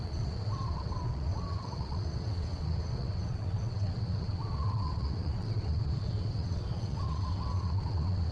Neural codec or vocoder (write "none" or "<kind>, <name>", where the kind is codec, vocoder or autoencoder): vocoder, WaveNeXt